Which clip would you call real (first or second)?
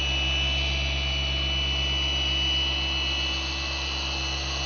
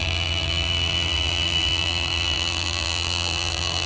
first